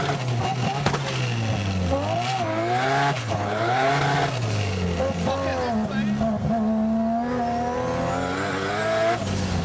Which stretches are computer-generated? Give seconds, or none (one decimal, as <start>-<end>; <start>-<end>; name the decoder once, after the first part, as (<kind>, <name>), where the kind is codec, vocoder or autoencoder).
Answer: 3.2-3.9 (codec, HILCodec)